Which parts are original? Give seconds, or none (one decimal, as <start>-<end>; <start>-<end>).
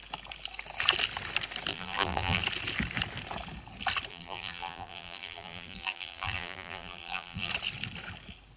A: 0.0-1.7; 2.4-4.1; 7.5-8.6